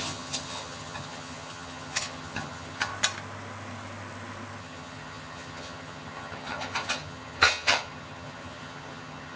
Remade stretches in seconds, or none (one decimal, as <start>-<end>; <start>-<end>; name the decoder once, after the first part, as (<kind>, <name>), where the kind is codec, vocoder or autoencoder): 0.0-2.9 (vocoder, HiFi-GAN); 4.6-9.4